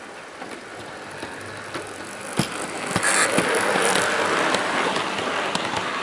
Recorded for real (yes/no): yes